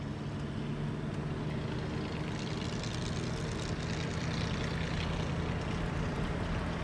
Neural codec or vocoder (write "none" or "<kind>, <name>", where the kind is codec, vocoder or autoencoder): none